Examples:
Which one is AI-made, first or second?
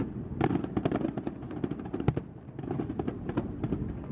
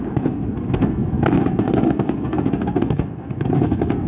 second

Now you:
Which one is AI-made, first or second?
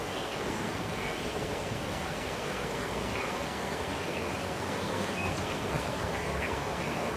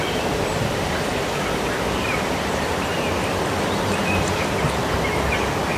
first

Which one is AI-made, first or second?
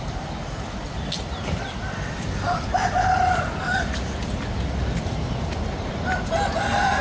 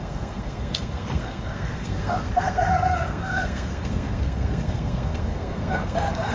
second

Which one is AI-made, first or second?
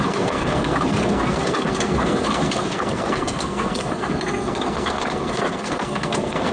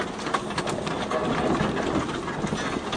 first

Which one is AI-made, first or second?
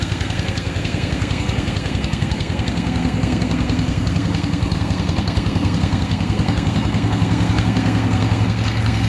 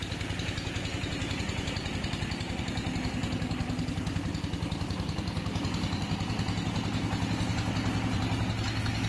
first